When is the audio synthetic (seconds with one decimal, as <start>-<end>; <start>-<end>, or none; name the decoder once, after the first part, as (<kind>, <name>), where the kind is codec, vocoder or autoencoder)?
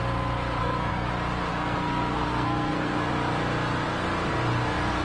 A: 0.6-1.1 (codec, SNAC); 1.5-3.1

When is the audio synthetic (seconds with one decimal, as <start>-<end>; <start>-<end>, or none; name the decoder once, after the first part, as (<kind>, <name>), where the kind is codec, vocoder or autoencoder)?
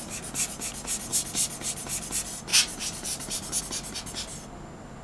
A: 2.5-3.6 (vocoder, BigVGAN v2)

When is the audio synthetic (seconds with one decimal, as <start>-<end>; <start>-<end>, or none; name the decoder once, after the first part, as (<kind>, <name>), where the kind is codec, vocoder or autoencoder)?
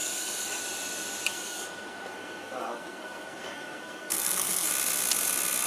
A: 0.0-0.6 (codec, SNAC); 1.3-4.7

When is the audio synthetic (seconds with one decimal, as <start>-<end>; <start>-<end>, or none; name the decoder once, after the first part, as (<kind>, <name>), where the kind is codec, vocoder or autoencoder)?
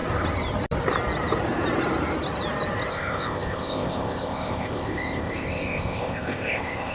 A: 2.9-6.9 (codec, ZipCodec)